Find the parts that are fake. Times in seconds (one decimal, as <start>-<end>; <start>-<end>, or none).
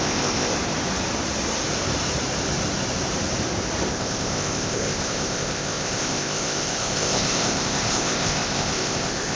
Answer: 0.0-0.5; 3.9-9.4